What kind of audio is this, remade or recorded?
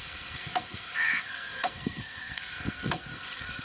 remade